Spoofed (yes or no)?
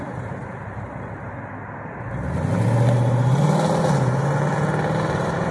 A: no